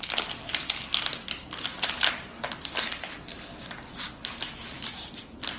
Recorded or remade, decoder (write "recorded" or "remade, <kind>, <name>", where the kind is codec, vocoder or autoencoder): recorded